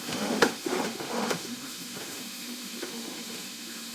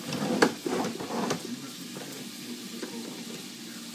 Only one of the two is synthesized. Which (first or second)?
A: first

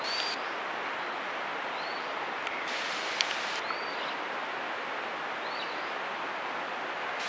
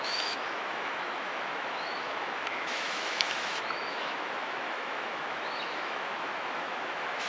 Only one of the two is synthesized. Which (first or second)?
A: second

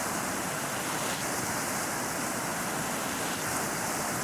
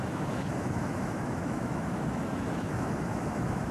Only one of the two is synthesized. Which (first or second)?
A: second